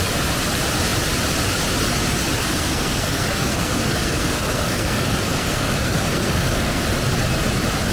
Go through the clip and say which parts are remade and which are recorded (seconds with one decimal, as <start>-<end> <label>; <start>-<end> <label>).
0.0-2.4 recorded; 2.4-6.8 remade; 6.8-7.9 recorded